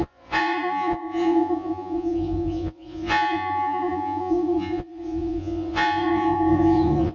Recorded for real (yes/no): no